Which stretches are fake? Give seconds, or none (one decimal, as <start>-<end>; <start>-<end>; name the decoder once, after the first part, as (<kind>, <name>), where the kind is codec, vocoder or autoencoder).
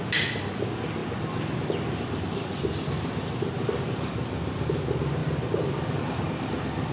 none